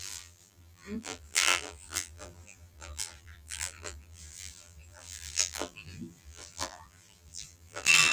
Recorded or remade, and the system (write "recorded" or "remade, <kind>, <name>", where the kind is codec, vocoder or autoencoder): remade, vocoder, BigVGAN v2